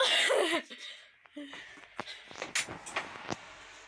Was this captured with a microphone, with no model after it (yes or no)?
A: yes